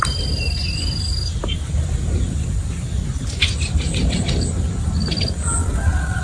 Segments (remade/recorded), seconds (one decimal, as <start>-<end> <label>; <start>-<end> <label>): 0.0-5.6 recorded; 5.6-6.2 remade